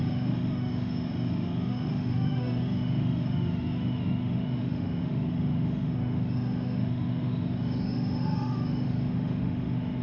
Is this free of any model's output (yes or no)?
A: no